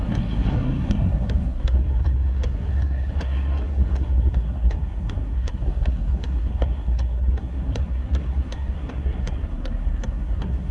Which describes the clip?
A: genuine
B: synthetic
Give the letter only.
B